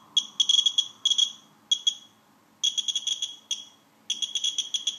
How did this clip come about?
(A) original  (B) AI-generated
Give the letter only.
A